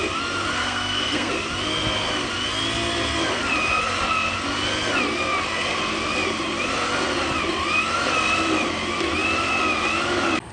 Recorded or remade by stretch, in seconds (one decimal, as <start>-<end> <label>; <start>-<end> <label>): 0.0-0.6 recorded; 0.6-1.3 remade; 1.3-10.5 recorded